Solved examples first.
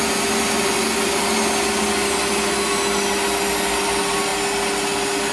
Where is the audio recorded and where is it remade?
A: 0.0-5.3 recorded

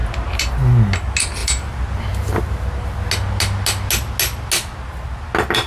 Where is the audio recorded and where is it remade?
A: 0.0-5.7 recorded

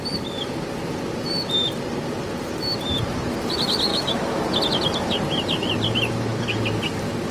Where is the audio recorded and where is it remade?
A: 0.0-3.9 recorded; 3.9-4.5 remade; 4.5-7.3 recorded

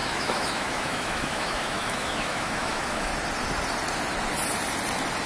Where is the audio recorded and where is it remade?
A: 0.0-3.1 remade; 3.1-5.3 recorded

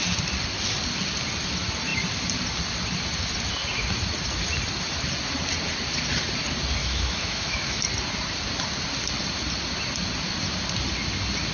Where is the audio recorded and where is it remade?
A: 0.0-6.8 recorded; 6.8-7.8 remade; 7.8-11.5 recorded

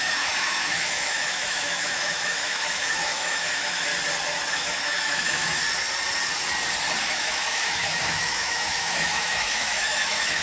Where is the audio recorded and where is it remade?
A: 0.0-3.9 remade; 3.9-4.5 recorded; 4.5-5.6 remade; 5.6-7.0 recorded; 7.0-10.4 remade